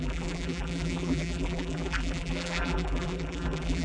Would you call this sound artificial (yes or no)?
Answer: yes